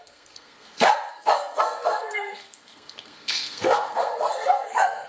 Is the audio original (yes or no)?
no